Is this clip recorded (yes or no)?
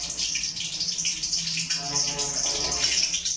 yes